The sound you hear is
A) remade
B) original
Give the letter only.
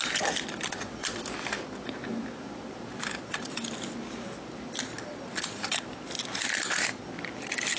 B